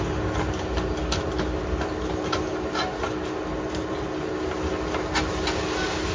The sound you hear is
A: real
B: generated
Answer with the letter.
A